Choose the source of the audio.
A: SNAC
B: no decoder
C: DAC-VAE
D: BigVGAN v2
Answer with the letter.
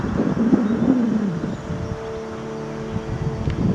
B